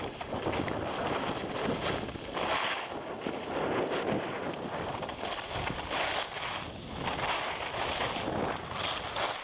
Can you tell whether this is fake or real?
real